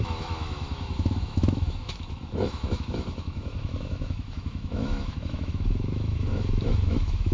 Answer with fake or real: fake